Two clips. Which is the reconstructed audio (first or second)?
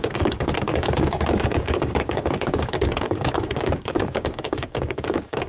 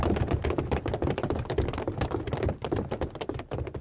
first